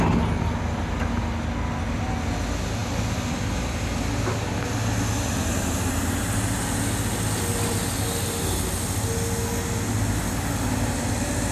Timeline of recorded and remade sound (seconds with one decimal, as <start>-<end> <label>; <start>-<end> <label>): 0.0-11.5 recorded